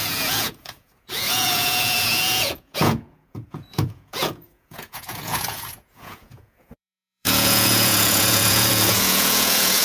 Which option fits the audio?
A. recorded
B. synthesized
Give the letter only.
B